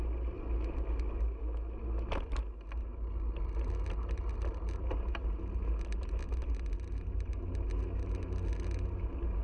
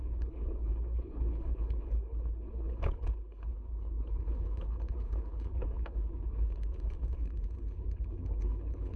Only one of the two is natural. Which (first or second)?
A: first